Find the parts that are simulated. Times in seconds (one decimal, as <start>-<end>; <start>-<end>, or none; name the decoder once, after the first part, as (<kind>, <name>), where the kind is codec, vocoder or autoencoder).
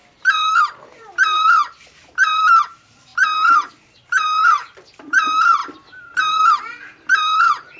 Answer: 0.6-6.9 (vocoder, BigVGAN v2)